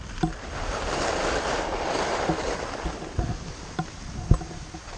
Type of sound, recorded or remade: recorded